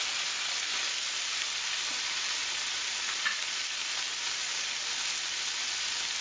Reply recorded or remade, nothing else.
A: remade